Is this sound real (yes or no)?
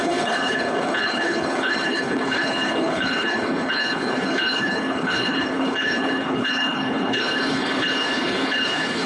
no